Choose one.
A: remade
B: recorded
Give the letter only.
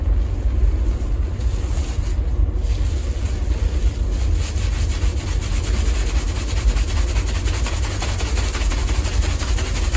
B